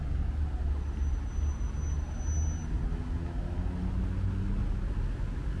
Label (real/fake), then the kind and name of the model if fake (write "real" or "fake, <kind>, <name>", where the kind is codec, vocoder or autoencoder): real